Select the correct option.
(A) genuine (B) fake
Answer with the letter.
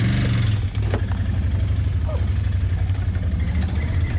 A